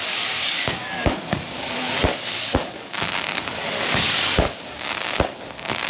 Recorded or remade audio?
remade